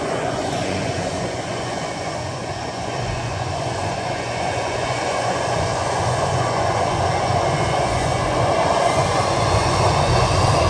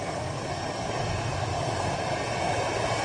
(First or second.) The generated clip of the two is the first